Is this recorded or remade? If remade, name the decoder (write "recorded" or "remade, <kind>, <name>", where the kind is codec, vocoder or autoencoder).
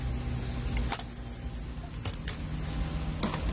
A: recorded